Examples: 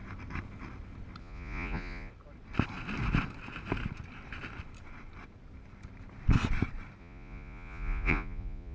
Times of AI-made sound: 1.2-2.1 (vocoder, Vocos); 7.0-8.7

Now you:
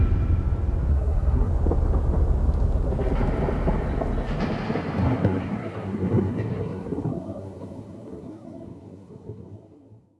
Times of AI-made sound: 0.9-1.5 (codec, SNAC); 5.0-10.2

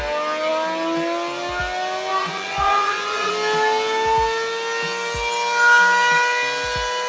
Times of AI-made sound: 2.1-3.3 (vocoder, Vocos)

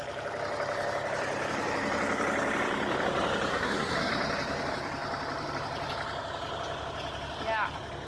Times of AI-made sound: 3.5-4.1 (codec, SNAC)

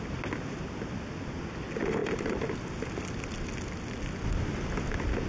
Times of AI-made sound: none

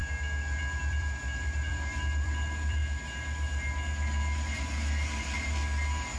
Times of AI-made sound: 0.9-2.8 (vocoder, BigVGAN v2)

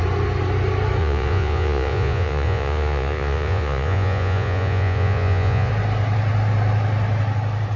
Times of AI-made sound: 1.0-5.7 (vocoder, Vocos)